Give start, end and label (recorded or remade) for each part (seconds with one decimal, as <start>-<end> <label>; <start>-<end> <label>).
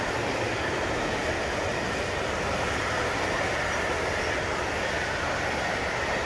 0.0-6.3 recorded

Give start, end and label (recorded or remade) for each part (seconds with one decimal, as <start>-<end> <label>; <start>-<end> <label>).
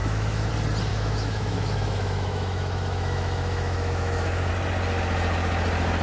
0.0-0.5 remade; 0.5-0.9 recorded; 0.9-4.5 remade; 4.5-6.0 recorded